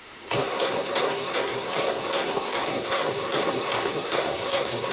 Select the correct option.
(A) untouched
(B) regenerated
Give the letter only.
B